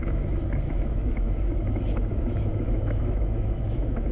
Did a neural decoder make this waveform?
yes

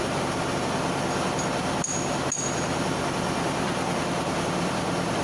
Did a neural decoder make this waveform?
no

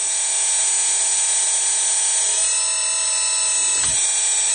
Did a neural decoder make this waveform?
no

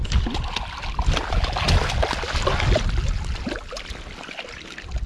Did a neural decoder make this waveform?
no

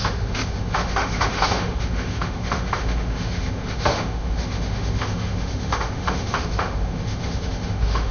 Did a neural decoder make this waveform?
yes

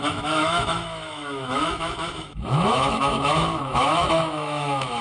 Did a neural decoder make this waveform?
yes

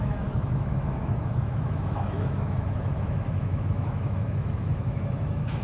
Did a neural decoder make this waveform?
yes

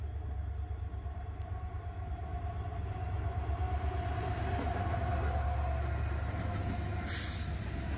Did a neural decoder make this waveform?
no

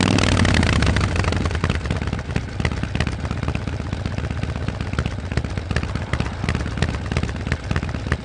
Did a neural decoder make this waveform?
no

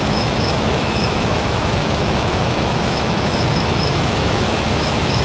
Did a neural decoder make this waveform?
yes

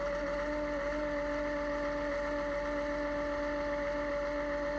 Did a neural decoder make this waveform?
no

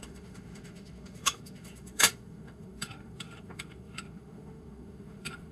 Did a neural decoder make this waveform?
yes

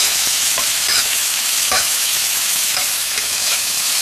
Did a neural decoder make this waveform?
yes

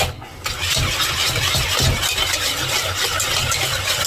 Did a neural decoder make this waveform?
no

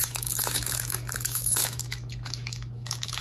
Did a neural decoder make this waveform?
yes